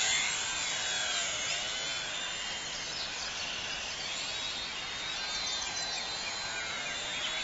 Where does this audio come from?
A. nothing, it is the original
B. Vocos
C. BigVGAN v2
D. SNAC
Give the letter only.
A